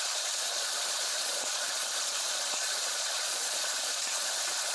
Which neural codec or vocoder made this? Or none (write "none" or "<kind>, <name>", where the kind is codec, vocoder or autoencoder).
vocoder, Vocos